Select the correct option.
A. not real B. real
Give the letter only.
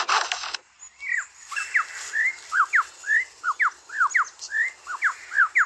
B